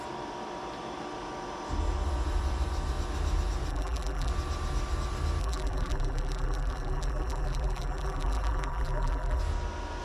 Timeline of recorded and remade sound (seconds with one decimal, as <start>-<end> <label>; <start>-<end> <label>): 0.0-3.7 recorded; 3.7-4.3 remade; 4.3-5.4 recorded; 5.4-9.4 remade; 9.4-10.0 recorded